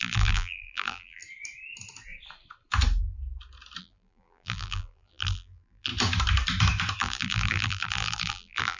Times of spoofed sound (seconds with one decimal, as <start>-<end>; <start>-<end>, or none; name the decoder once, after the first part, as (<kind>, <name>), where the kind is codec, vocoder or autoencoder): 0.0-1.2 (vocoder, BigVGAN v2); 3.8-5.9; 7.0-8.8